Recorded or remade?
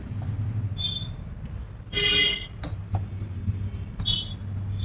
recorded